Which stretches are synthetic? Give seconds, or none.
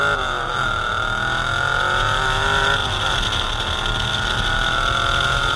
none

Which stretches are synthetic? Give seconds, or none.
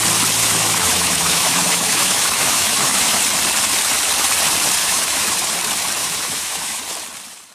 0.4-3.2 (autoencoder, DAC-VAE); 4.8-5.6; 6.0-6.8